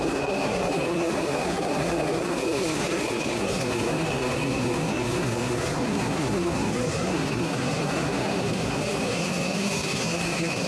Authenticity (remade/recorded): remade